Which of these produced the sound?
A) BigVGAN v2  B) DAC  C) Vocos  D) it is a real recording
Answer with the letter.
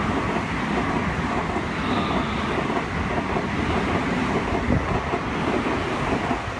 D